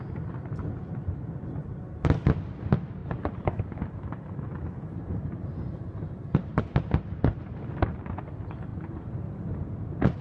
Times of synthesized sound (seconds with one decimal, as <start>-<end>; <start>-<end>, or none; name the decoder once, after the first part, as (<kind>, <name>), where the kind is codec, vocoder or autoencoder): 3.0-6.6 (vocoder, BigVGAN v2); 8.7-9.7